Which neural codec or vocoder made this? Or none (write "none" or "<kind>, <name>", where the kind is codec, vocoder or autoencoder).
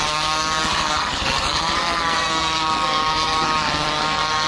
codec, SNAC